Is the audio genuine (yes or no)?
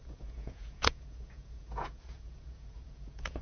no